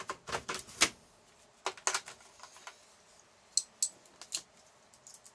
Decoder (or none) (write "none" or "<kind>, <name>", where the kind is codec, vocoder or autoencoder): none